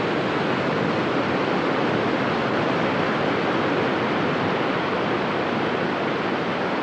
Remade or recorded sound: recorded